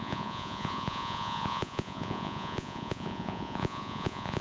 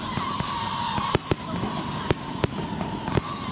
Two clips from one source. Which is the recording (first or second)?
second